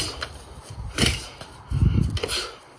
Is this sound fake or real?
real